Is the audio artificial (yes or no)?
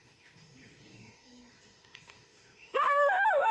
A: yes